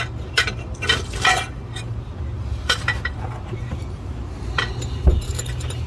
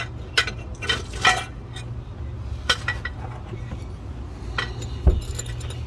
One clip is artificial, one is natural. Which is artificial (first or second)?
first